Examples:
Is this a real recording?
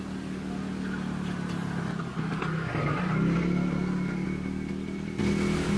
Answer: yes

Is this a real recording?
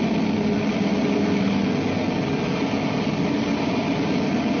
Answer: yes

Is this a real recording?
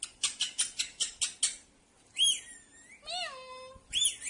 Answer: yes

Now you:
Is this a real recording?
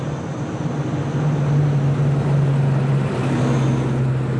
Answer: yes